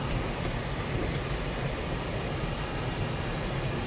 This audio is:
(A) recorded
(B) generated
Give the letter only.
A